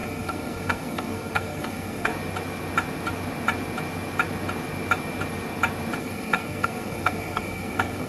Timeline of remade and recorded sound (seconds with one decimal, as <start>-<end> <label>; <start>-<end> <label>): 0.0-2.1 remade; 2.1-6.0 recorded; 6.0-8.1 remade